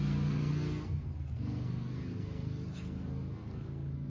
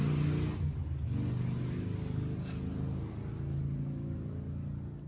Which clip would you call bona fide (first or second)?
second